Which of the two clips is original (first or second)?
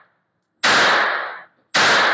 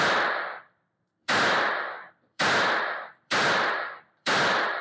first